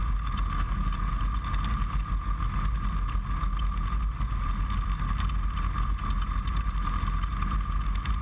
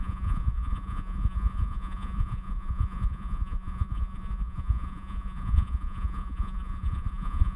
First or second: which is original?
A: first